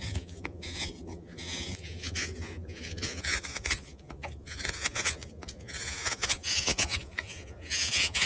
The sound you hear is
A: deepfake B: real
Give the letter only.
A